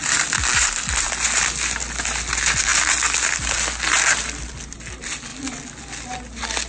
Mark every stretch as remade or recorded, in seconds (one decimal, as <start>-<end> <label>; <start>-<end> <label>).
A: 0.0-6.7 recorded

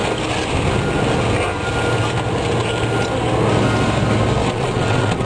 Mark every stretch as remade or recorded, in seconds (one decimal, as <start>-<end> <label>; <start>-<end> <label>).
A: 0.0-4.4 recorded; 4.4-5.3 remade

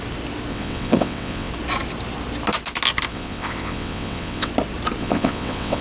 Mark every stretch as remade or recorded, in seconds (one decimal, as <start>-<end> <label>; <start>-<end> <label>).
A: 0.0-0.5 recorded; 0.5-1.5 remade; 1.5-3.1 recorded; 3.1-4.5 remade; 4.5-5.0 recorded; 5.0-5.8 remade

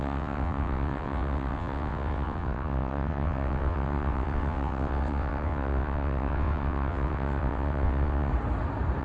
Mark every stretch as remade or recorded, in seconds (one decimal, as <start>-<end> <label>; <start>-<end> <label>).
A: 0.0-8.3 remade; 8.3-9.0 recorded

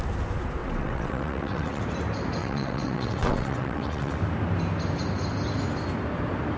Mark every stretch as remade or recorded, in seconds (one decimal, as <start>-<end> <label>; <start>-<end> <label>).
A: 0.0-0.6 recorded; 0.6-1.8 remade; 1.8-2.4 recorded; 2.4-4.2 remade; 4.2-6.6 recorded